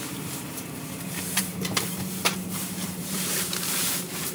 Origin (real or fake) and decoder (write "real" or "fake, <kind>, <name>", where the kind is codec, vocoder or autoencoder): fake, vocoder, BigVGAN v2